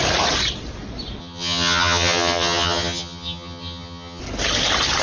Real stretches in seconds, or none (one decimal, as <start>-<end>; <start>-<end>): 0.0-1.2; 4.2-5.0